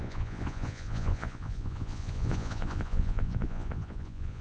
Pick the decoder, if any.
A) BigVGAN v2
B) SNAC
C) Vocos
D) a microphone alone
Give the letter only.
C